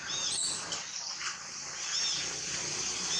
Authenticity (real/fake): real